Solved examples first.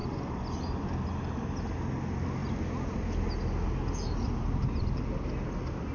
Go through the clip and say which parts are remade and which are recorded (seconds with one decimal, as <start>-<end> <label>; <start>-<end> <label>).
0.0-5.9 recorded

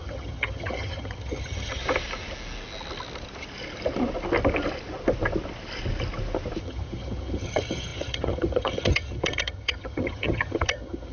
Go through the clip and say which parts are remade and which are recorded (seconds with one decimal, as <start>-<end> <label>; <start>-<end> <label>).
0.0-1.8 remade; 1.8-6.6 recorded; 6.6-11.1 remade

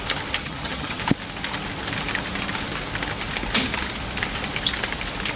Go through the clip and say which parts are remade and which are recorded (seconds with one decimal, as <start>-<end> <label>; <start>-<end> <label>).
0.0-0.4 recorded; 0.4-1.0 remade; 1.0-5.4 recorded

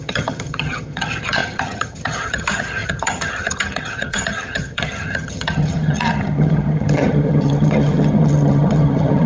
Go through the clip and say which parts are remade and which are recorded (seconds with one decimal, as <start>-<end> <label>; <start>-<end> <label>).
0.0-9.3 remade